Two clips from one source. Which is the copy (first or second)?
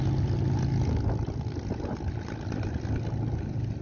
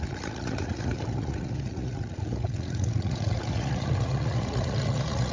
second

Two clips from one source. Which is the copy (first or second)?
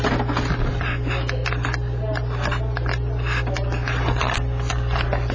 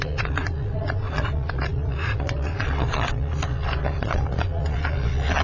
second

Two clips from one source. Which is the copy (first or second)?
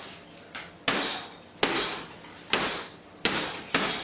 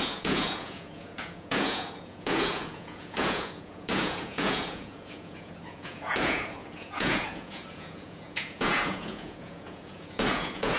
second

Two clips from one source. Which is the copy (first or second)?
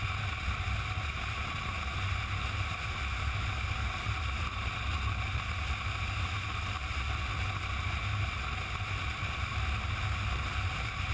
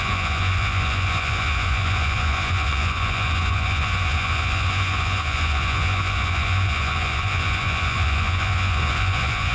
second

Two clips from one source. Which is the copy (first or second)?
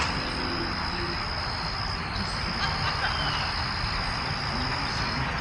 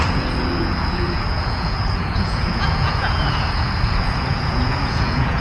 second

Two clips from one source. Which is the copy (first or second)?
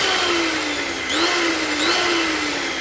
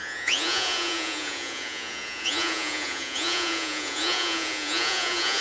second